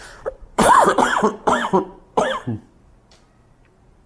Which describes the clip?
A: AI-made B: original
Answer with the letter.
A